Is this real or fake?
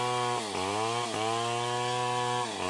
real